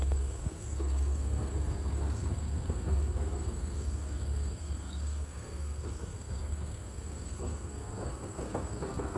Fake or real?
fake